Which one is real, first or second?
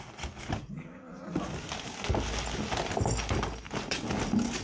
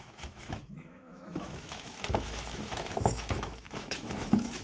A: first